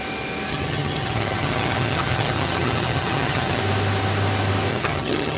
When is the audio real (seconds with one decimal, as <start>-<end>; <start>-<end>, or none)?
0.0-0.5; 3.6-4.7